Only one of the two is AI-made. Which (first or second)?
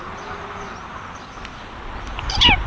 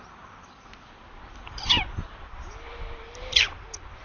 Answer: second